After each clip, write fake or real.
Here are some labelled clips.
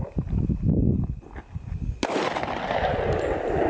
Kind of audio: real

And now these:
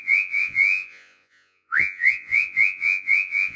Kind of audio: fake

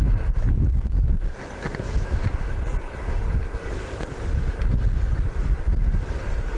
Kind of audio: real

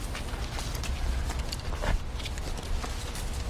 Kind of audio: real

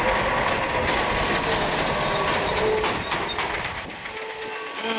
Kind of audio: real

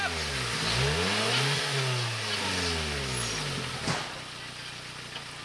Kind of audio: real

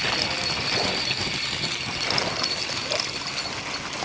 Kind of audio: real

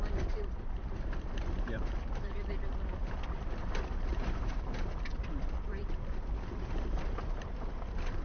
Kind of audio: fake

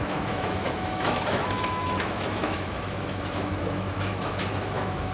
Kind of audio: fake